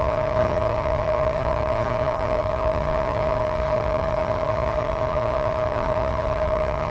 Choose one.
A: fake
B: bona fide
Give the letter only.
A